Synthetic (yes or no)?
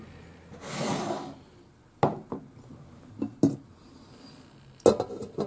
no